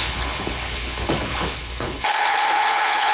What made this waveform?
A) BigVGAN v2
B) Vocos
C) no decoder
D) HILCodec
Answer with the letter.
D